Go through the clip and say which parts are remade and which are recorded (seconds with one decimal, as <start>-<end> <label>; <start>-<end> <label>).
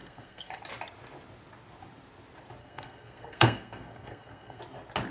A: 0.0-0.6 remade; 0.6-2.6 recorded; 2.6-4.6 remade; 4.6-5.1 recorded